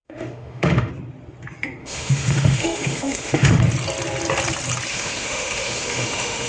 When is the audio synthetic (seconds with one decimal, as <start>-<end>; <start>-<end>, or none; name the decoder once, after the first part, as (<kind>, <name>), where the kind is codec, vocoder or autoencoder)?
0.0-0.9 (autoencoder, DAC-VAE); 1.8-3.6; 4.9-6.5